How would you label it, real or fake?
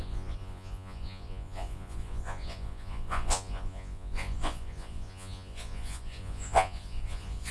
fake